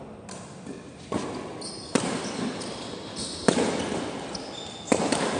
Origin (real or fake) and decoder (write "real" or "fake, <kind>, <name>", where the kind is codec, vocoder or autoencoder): real